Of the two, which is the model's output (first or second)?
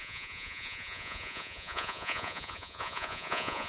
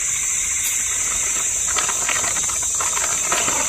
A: first